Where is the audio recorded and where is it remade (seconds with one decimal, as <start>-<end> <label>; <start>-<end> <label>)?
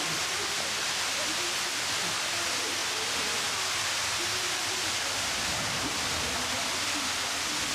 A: 0.0-7.7 recorded